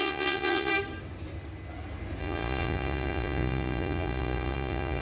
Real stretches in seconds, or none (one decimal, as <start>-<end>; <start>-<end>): 0.7-2.2